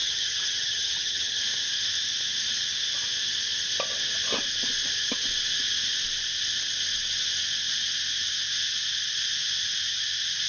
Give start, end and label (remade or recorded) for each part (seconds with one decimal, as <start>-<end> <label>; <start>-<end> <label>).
0.0-1.4 remade; 1.4-10.5 recorded